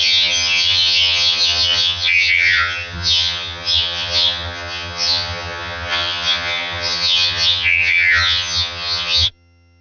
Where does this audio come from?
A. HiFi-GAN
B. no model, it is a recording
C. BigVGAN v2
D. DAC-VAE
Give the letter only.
A